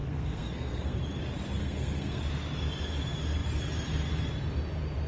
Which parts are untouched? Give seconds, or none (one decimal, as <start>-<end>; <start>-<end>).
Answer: 1.0-1.6; 2.2-5.1

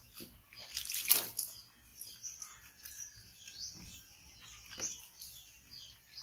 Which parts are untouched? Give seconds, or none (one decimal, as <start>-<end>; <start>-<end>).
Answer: 1.1-6.2

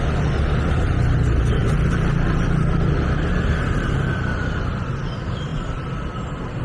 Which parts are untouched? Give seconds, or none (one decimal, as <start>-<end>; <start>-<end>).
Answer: 0.0-1.6; 3.3-6.6

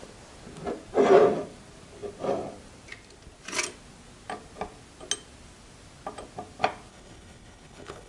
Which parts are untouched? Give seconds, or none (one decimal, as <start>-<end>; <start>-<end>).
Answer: 0.0-6.9

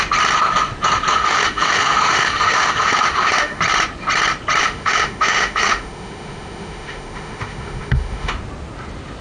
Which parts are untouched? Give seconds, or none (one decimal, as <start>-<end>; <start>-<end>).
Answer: 0.0-1.1; 3.6-4.6; 8.3-9.2

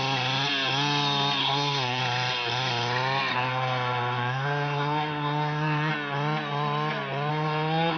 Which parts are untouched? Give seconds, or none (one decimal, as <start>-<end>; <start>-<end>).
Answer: 0.0-1.4; 2.0-3.3; 5.9-7.3

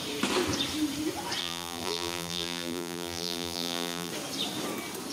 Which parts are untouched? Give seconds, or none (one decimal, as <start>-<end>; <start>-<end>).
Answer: 0.0-1.4; 4.1-5.1